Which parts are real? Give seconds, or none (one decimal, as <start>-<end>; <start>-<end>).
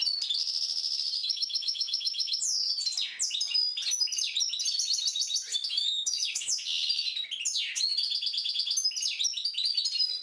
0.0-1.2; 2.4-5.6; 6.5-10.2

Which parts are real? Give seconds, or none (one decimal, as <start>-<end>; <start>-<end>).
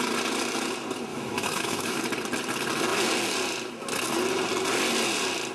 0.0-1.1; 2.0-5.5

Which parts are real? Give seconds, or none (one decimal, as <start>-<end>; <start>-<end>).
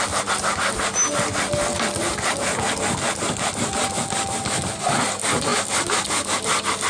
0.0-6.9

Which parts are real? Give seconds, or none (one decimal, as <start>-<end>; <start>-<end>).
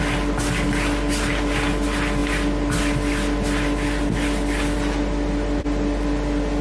0.0-6.6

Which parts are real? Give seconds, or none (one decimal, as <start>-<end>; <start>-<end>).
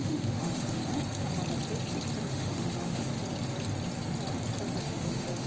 0.8-2.3; 3.1-4.8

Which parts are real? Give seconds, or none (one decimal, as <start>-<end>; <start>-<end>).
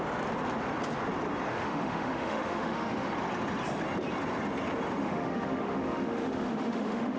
0.0-1.5; 3.1-5.0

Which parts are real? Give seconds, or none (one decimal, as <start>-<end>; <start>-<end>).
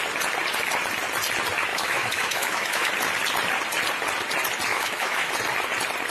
0.0-1.7; 2.9-4.7; 5.3-6.1